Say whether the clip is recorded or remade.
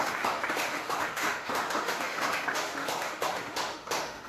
remade